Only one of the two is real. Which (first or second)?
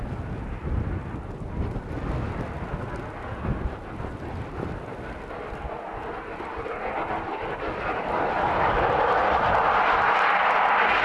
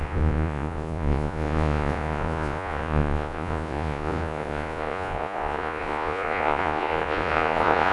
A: first